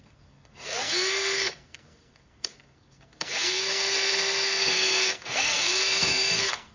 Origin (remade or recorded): remade